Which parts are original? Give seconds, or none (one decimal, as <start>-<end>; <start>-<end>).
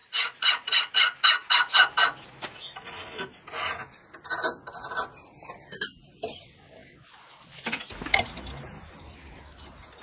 0.9-10.0